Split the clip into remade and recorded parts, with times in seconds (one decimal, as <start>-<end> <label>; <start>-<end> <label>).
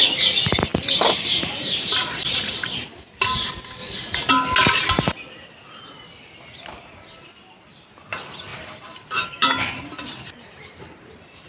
0.0-0.7 recorded; 0.7-3.2 remade; 3.2-8.5 recorded; 8.5-11.0 remade; 11.0-11.5 recorded